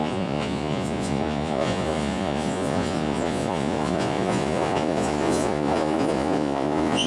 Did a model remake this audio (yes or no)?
yes